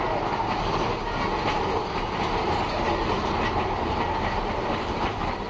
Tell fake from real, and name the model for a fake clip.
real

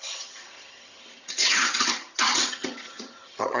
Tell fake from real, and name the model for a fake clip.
fake, vocoder, HiFi-GAN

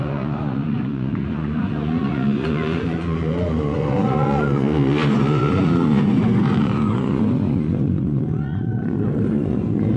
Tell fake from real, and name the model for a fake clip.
fake, vocoder, Vocos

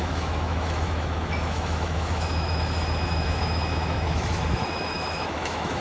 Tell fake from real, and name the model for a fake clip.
fake, autoencoder, DAC-VAE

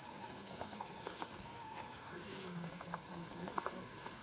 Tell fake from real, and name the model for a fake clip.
fake, codec, SNAC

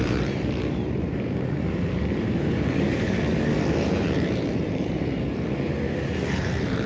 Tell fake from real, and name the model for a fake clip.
fake, vocoder, BigVGAN v2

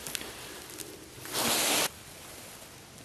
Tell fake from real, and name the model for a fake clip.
real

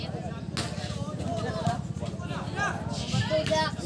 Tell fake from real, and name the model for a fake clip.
real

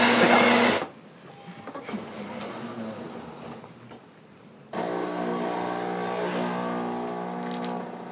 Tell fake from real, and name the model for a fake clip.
real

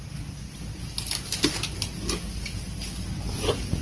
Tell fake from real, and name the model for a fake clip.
real